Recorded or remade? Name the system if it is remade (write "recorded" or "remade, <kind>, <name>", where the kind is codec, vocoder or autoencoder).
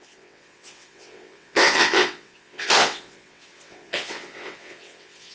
remade, vocoder, WaveNeXt